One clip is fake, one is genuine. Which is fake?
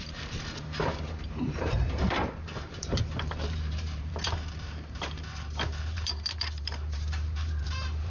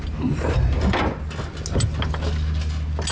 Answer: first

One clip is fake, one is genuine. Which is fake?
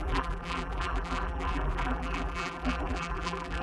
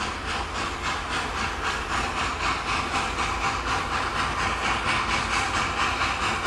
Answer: first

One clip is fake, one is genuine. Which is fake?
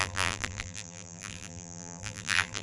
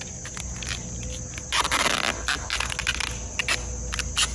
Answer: first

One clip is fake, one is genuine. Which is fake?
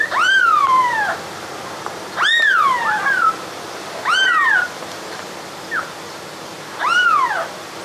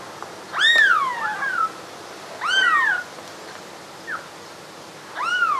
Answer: first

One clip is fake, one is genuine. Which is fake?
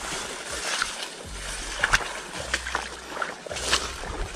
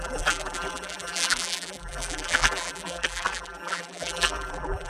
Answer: second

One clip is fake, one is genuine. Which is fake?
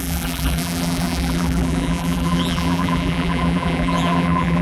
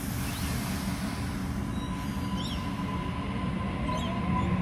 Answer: first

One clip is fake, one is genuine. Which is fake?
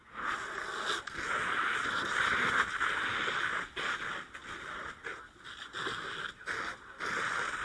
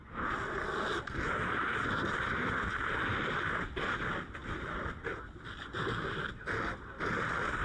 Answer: second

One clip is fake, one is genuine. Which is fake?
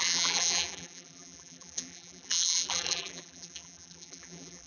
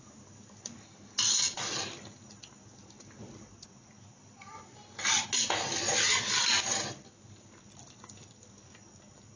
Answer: first